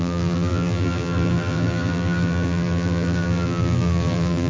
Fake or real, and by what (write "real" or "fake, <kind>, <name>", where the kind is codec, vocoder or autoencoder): fake, vocoder, BigVGAN v2